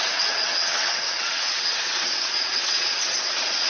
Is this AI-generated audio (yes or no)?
yes